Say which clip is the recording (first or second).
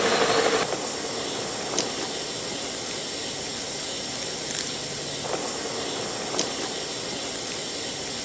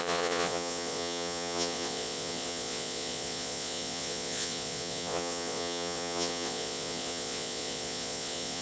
first